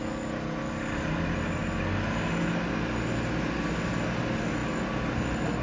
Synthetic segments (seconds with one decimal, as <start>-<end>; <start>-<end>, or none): none